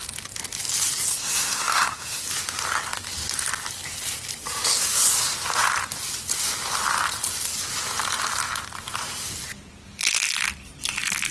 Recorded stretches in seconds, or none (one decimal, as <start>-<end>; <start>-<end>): 0.0-1.1; 2.2-11.3